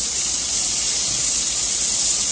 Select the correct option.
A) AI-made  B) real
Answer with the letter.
A